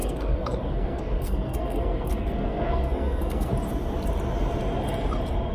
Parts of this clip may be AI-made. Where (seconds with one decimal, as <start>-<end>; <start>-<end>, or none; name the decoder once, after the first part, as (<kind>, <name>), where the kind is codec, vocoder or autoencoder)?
0.0-3.5 (codec, SNAC)